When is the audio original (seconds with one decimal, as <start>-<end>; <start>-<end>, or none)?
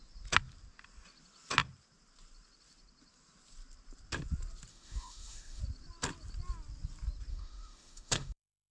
0.0-4.7; 5.6-7.3